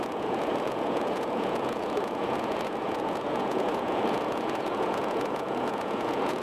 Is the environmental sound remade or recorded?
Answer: remade